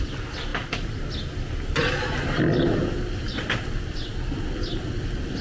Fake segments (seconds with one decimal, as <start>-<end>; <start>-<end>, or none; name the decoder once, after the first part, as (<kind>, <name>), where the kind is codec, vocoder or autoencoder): none